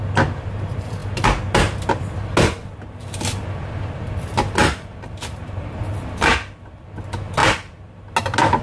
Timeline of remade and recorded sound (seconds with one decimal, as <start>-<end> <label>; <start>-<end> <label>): 0.0-4.6 recorded; 4.6-5.8 remade; 5.8-8.6 recorded